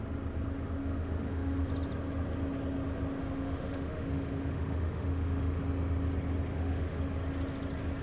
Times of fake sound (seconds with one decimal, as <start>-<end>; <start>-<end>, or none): 0.8-1.7; 3.2-5.6; 6.5-7.0